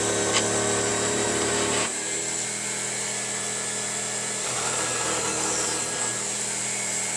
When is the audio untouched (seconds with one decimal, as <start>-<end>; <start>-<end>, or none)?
0.0-0.9; 2.2-7.2